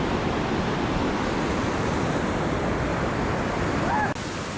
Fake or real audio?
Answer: real